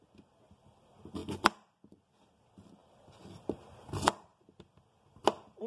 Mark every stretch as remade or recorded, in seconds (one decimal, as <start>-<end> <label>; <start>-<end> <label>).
0.0-5.7 recorded